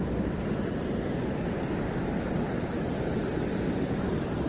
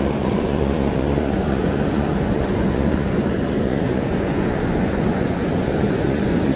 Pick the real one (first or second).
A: first